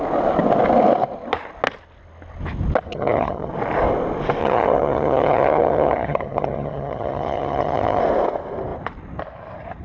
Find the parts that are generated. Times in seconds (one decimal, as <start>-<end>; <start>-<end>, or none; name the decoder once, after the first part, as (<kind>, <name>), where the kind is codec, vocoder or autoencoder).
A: 2.9-3.5 (vocoder, HiFi-GAN); 4.4-8.0

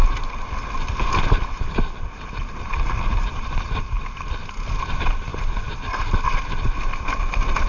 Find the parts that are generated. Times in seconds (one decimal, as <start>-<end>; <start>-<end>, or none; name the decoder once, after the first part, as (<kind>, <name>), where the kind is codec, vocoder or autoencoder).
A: none

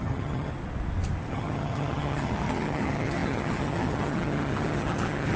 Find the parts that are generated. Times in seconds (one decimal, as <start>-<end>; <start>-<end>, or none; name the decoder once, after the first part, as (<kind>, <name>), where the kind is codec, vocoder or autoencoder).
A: 0.0-0.5 (vocoder, HiFi-GAN); 1.3-5.4

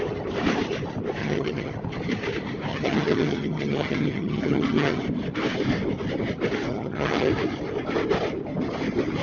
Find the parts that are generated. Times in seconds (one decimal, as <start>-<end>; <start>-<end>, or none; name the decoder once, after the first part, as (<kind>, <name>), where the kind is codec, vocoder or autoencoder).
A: 1.2-1.7 (vocoder, HiFi-GAN); 2.7-5.0; 6.7-7.3

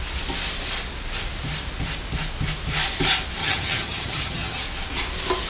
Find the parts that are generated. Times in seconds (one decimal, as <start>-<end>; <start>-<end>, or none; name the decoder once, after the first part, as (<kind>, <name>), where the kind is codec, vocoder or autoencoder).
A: 3.4-4.6 (vocoder, HiFi-GAN)